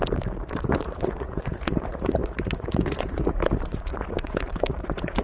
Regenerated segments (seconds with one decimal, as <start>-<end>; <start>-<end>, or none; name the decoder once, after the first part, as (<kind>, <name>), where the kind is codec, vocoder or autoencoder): 0.5-5.2 (vocoder, Vocos)